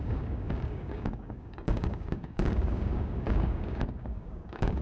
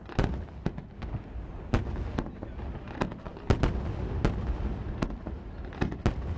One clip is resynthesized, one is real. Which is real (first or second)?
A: second